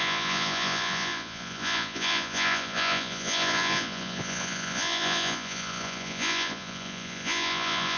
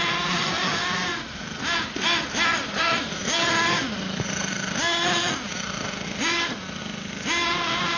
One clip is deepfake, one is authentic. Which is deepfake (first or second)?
first